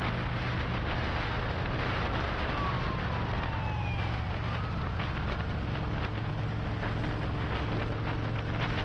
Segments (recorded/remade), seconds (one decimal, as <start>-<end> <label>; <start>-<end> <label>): 0.0-8.8 recorded